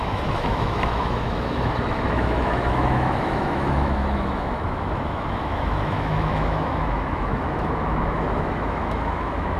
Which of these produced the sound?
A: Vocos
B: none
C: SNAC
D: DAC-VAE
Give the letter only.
D